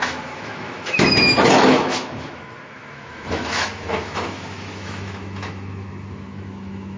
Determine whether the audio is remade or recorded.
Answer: remade